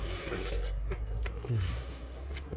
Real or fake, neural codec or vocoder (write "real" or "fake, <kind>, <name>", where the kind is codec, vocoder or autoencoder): fake, codec, SNAC